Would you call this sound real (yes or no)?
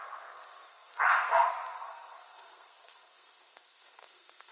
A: no